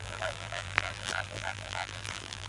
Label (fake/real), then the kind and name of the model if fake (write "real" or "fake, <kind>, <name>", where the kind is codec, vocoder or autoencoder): fake, vocoder, BigVGAN v2